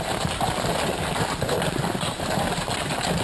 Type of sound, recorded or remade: recorded